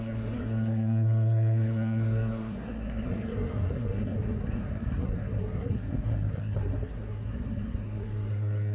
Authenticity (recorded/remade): remade